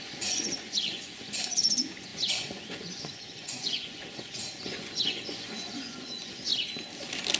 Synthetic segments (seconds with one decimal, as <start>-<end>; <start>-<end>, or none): 0.0-6.5

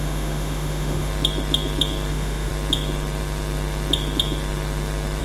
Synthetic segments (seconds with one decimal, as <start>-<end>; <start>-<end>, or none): 0.0-1.1; 2.1-2.5

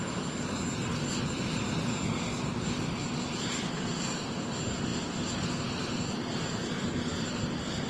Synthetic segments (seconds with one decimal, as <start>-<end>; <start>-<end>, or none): none

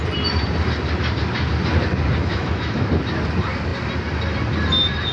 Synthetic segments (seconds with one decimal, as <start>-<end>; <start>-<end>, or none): 2.2-2.9

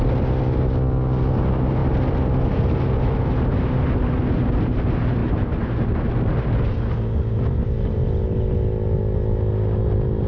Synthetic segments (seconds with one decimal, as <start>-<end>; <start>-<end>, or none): none

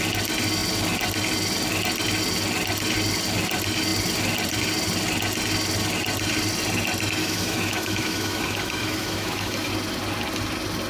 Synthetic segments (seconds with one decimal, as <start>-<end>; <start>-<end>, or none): 7.2-9.7